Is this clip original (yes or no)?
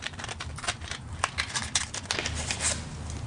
yes